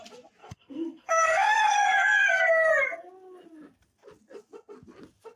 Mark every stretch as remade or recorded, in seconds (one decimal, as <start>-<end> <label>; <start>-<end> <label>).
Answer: 0.0-0.4 recorded; 0.4-2.7 remade; 2.7-5.4 recorded

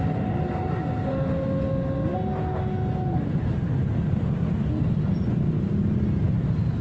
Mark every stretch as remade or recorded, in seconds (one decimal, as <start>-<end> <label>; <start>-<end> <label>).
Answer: 0.0-6.8 recorded